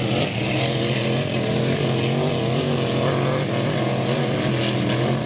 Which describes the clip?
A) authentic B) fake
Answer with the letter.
A